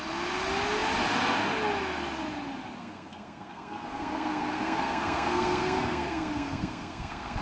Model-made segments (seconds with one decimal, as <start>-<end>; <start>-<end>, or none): 2.8-7.4